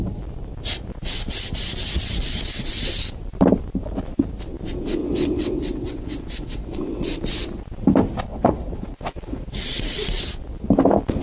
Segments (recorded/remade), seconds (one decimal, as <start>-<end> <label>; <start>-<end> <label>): 0.0-5.0 recorded; 5.0-7.2 remade; 7.2-8.3 recorded; 8.3-10.2 remade; 10.2-11.2 recorded